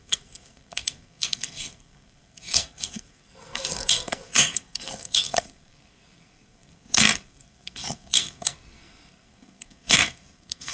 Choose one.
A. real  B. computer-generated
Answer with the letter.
B